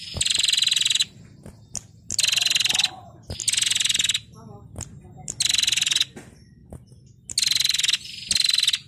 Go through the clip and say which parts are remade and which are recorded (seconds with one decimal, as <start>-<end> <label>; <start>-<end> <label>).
0.0-8.9 recorded